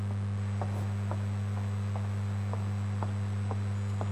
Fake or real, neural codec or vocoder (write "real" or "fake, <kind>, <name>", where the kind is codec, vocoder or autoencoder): real